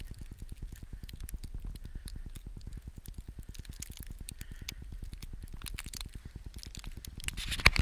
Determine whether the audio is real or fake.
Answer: real